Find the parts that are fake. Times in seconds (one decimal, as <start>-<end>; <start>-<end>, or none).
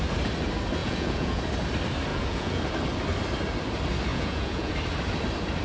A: 0.8-1.4; 2.1-2.6; 4.1-4.7